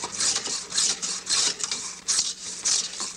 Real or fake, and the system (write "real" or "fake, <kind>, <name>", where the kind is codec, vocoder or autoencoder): fake, vocoder, BigVGAN v2